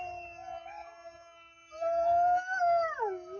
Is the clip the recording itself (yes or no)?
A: yes